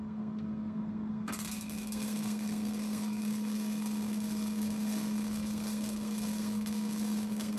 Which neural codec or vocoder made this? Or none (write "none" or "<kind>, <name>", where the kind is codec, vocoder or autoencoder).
codec, SNAC